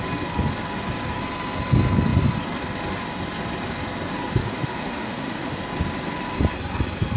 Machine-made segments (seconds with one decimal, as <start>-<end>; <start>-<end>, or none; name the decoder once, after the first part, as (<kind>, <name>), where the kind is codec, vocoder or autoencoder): 4.4-5.6 (autoencoder, DAC-VAE)